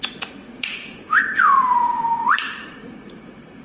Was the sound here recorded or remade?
remade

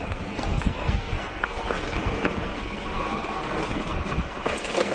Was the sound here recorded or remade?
remade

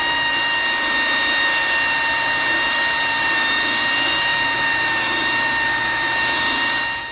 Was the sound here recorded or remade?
recorded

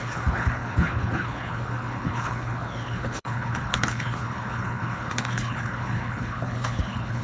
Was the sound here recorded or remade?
remade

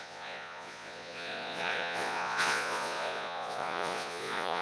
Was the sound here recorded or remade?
remade